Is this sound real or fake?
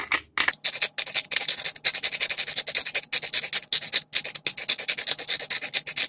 real